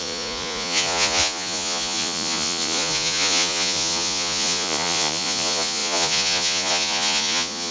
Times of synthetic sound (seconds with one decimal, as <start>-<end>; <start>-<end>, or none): 0.0-7.7